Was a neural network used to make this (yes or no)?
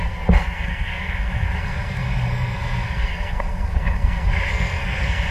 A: yes